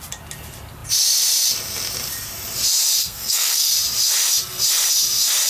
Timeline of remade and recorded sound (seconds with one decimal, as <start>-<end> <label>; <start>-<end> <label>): 0.0-3.0 recorded; 3.0-3.7 remade; 3.7-5.5 recorded